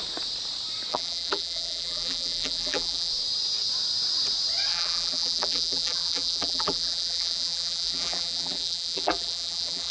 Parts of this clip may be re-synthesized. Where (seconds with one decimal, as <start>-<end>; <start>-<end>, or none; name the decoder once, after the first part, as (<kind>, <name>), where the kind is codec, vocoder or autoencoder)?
0.9-3.1 (vocoder, BigVGAN v2); 4.7-9.9